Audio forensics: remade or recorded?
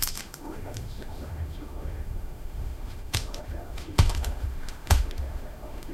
remade